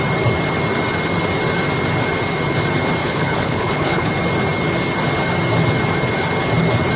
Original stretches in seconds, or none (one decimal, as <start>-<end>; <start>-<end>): 0.0-3.0; 4.1-7.0